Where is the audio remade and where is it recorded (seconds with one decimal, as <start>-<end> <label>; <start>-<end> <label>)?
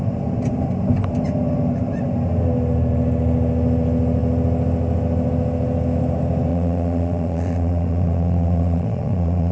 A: 0.0-6.5 recorded; 6.5-9.5 remade